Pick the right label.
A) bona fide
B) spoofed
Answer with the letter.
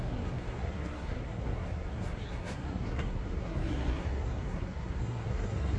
B